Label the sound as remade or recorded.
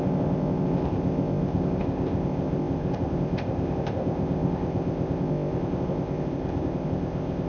remade